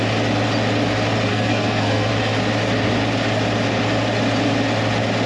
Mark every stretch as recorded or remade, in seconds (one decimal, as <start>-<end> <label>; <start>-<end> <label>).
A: 0.0-1.3 recorded; 1.3-2.1 remade; 2.1-5.3 recorded